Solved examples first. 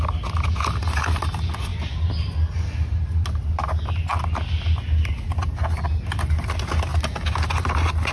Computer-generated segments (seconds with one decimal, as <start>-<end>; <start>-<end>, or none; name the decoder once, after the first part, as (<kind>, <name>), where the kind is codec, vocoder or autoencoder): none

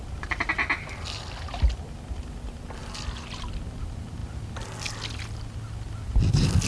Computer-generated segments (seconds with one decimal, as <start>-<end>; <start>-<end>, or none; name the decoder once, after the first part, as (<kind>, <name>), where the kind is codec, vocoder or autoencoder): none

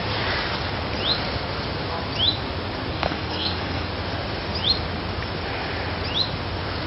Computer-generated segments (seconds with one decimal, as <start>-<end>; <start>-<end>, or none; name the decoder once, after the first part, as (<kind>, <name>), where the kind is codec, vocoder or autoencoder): 2.9-3.9 (codec, SNAC)